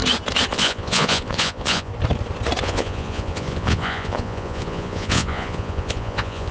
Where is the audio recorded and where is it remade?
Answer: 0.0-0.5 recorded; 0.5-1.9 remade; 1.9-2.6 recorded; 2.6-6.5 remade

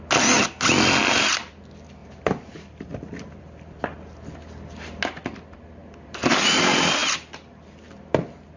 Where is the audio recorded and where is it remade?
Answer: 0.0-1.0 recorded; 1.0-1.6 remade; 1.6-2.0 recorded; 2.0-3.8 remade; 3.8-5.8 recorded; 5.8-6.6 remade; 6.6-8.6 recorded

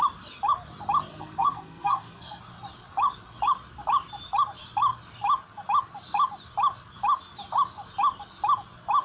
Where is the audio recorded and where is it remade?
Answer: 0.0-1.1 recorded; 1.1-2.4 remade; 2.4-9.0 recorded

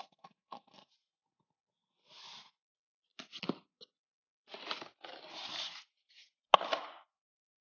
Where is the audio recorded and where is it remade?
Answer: 0.0-0.9 remade; 0.9-7.6 recorded

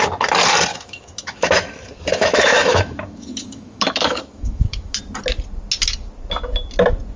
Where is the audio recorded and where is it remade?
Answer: 0.0-0.7 recorded; 0.7-5.0 remade; 5.0-7.2 recorded